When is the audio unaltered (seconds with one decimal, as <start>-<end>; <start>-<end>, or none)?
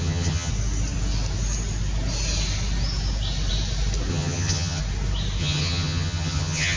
0.5-4.1; 4.8-5.4